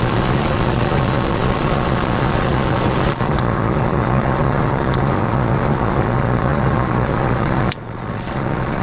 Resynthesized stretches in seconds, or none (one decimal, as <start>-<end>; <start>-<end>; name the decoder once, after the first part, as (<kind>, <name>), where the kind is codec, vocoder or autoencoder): 0.0-8.8 (vocoder, Vocos)

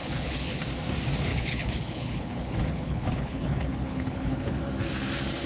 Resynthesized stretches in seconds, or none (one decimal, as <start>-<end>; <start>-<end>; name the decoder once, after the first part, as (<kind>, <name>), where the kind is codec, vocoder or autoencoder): 0.0-0.6 (codec, HILCodec); 1.3-4.6

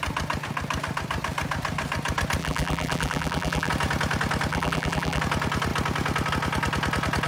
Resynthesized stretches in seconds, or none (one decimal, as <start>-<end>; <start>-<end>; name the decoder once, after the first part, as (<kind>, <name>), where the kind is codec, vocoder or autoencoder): 2.4-3.7 (vocoder, BigVGAN v2); 4.5-5.2

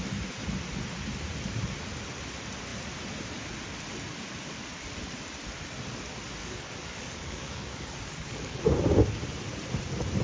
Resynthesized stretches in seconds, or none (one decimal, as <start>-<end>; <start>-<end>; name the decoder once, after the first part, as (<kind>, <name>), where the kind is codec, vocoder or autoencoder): 6.4-8.6 (codec, DAC)

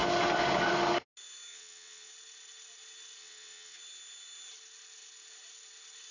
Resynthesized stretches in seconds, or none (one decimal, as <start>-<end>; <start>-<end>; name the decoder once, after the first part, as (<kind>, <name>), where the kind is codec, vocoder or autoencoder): 1.5-2.1 (vocoder, WaveNeXt); 3.2-3.8

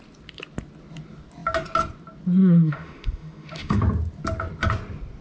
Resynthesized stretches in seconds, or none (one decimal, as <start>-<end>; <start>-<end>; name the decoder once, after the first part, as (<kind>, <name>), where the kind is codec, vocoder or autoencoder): 2.4-3.8 (autoencoder, DAC-VAE)

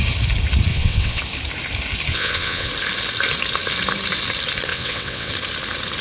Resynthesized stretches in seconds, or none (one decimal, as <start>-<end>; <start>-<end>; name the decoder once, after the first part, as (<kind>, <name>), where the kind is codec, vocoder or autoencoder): 0.7-1.2 (vocoder, WaveNeXt); 2.1-2.7; 4.7-5.3

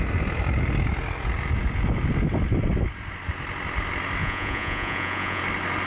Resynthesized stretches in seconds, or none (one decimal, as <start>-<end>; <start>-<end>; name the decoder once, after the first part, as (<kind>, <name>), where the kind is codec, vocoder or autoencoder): 4.2-5.4 (vocoder, Vocos)